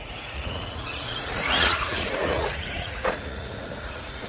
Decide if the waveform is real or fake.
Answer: fake